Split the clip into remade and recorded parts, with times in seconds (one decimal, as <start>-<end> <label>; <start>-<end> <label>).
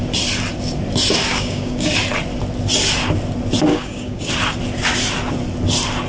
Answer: 0.0-1.3 recorded; 1.3-1.9 remade; 1.9-3.7 recorded; 3.7-4.3 remade; 4.3-6.1 recorded